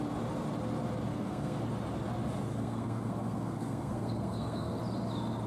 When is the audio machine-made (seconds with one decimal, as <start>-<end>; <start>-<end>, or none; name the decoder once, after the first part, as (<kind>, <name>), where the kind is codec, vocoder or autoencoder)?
1.1-1.6 (codec, SNAC); 2.5-4.8